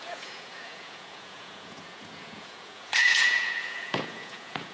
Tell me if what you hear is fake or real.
fake